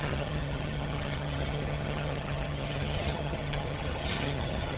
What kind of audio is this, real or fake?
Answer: fake